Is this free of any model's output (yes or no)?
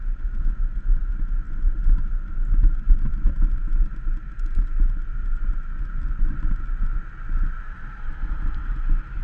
yes